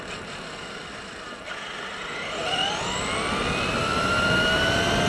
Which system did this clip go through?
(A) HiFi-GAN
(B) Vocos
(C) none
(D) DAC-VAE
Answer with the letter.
C